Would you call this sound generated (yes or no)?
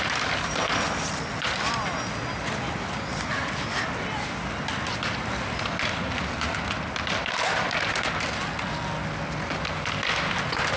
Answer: no